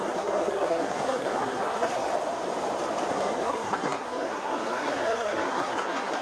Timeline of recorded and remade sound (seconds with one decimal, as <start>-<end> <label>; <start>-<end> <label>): 0.0-2.1 remade; 2.1-3.1 recorded; 3.1-6.2 remade